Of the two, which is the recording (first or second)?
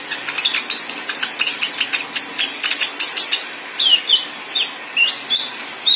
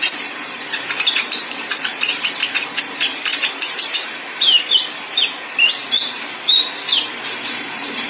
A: first